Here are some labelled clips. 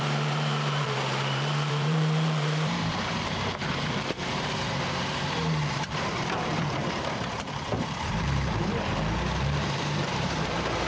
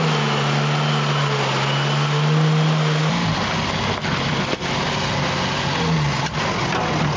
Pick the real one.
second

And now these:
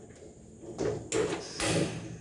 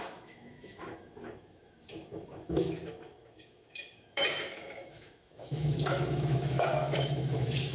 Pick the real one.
first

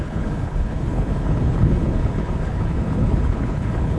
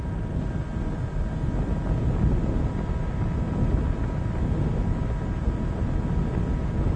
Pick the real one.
second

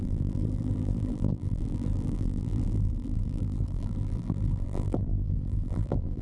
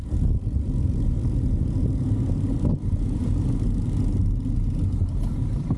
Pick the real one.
second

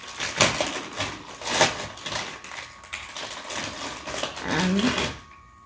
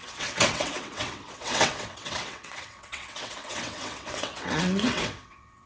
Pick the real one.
first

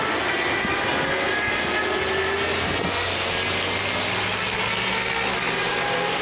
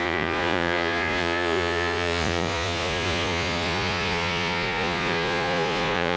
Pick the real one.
first